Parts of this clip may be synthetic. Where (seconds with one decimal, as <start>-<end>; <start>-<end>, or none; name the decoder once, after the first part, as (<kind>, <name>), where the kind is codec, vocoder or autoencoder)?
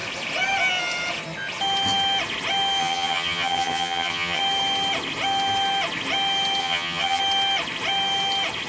2.8-4.4 (vocoder, HiFi-GAN); 6.6-7.2